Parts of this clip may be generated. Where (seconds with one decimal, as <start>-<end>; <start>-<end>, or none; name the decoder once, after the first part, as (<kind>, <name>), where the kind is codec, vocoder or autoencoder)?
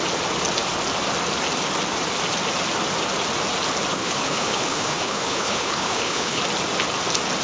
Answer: 3.9-6.4 (codec, HILCodec)